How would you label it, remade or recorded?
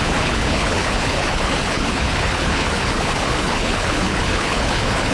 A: remade